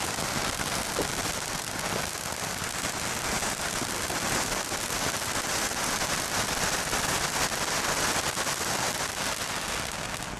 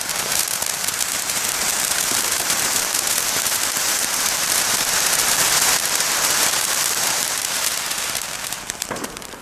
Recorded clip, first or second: first